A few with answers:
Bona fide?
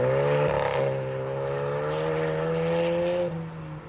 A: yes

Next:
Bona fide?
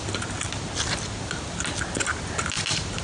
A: yes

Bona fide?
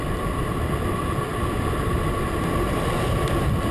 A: yes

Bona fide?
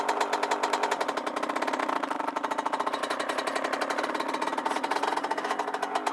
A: yes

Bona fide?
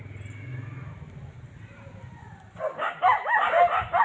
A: yes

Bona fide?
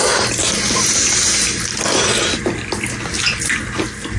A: yes